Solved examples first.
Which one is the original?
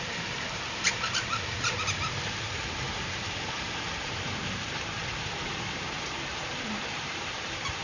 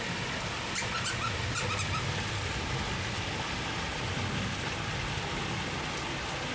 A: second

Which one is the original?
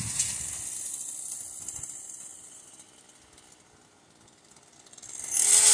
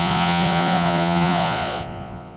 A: first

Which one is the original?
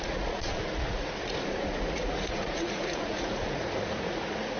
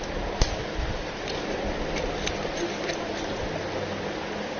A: second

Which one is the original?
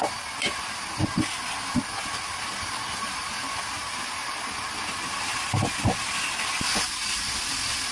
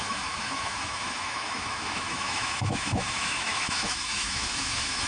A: first